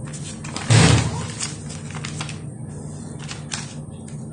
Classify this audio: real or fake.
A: real